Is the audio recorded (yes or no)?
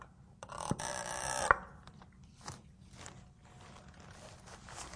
yes